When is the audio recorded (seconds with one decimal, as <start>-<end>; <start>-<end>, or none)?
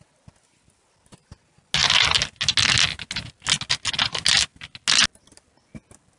0.0-6.2